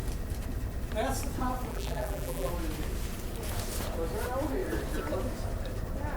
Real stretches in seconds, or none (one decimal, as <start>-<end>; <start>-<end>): 0.0-1.7; 2.5-6.2